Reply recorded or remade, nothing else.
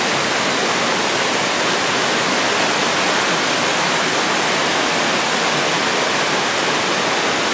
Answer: recorded